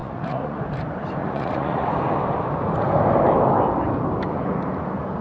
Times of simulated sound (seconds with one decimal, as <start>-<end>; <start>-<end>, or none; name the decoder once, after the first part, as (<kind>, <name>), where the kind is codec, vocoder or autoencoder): 0.0-0.6 (vocoder, Vocos); 1.2-1.9